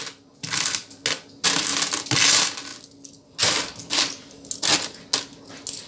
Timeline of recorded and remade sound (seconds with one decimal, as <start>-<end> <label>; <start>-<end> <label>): 0.0-5.9 recorded